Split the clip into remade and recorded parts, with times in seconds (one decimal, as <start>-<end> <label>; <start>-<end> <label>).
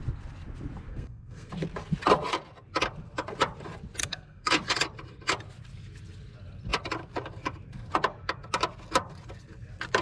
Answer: 0.0-0.9 recorded; 0.9-1.5 remade; 1.5-4.0 recorded; 4.0-4.5 remade; 4.5-10.0 recorded